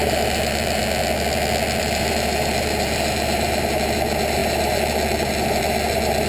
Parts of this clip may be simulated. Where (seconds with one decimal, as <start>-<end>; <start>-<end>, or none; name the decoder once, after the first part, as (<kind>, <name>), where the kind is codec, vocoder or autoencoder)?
0.0-0.8 (vocoder, BigVGAN v2); 1.8-6.3